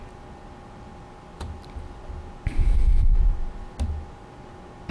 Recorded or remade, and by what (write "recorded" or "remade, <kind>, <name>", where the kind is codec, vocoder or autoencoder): recorded